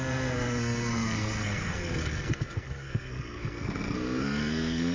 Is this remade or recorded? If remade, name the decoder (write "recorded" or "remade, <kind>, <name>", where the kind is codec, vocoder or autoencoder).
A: remade, codec, SNAC